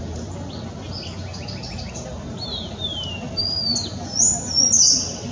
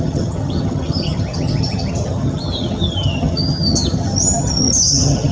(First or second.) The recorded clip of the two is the first